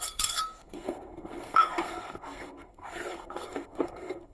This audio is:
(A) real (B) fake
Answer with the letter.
B